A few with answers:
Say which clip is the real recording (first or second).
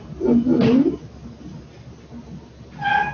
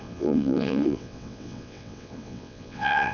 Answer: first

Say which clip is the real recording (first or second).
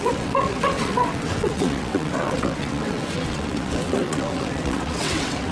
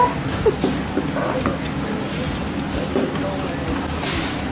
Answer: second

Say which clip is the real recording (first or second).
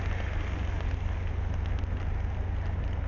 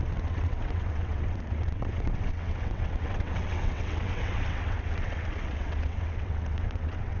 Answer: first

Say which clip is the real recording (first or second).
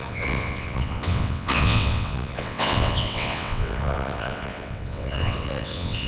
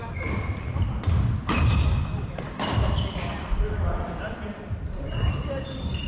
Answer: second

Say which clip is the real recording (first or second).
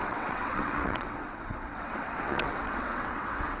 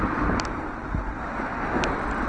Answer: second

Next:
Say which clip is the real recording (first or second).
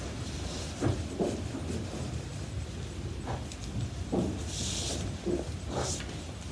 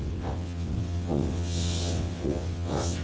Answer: first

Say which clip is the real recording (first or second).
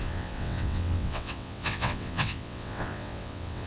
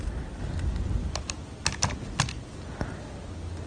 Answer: second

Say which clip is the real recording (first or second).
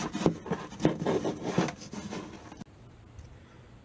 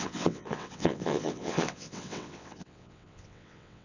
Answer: first